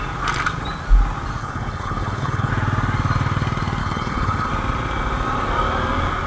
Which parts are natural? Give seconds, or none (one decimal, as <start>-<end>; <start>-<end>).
0.0-1.4; 2.5-3.8; 4.5-6.3